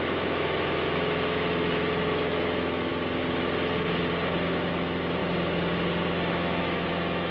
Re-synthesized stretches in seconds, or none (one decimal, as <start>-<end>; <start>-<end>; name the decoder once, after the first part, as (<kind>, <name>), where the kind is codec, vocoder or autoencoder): 0.0-2.9 (autoencoder, DAC-VAE); 4.7-5.2; 6.3-7.3